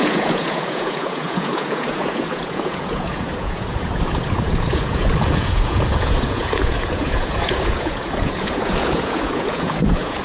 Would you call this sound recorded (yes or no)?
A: no